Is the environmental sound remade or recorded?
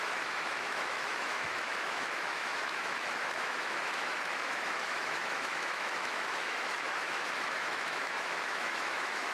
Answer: remade